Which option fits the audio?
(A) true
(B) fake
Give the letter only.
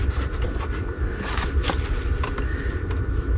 A